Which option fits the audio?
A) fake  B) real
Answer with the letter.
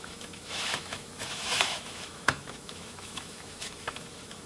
A